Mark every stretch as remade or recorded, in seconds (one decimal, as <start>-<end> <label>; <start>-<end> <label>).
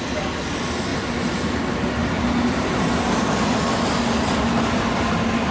0.0-2.0 recorded; 2.0-4.1 remade; 4.1-5.5 recorded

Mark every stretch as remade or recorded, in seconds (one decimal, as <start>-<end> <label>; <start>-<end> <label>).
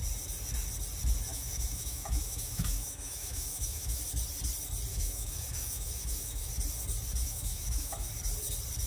0.0-1.3 recorded; 1.3-4.0 remade; 4.0-4.9 recorded; 4.9-6.5 remade; 6.5-7.2 recorded; 7.2-8.1 remade; 8.1-8.9 recorded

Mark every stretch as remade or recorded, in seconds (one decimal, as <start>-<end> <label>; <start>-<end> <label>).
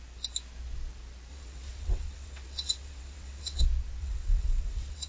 0.0-1.3 recorded; 1.3-3.6 remade; 3.6-4.0 recorded; 4.0-5.1 remade